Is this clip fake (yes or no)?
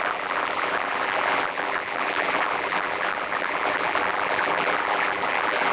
yes